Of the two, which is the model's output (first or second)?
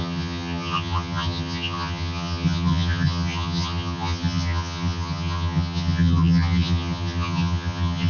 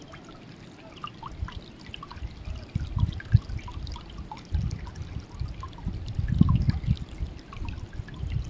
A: first